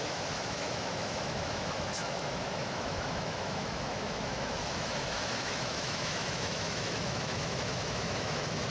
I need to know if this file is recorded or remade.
remade